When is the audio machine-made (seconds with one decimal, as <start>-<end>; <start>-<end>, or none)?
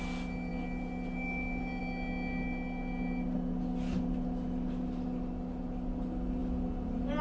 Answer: none